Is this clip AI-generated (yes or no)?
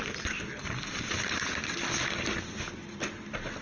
no